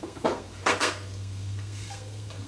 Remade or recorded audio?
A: remade